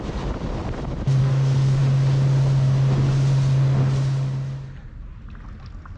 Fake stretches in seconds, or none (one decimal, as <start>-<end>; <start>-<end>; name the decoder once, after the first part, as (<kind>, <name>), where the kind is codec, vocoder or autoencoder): 1.2-1.8 (codec, SNAC)